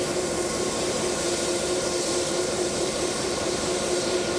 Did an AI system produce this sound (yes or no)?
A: yes